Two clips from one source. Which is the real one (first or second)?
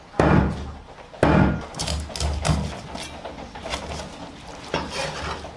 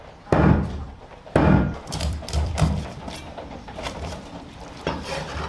first